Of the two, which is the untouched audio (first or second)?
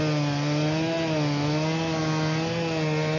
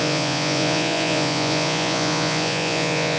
first